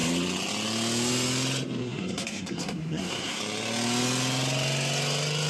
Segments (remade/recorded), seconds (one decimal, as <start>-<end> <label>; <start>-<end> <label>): 0.0-1.8 recorded; 1.8-3.4 remade; 3.4-5.5 recorded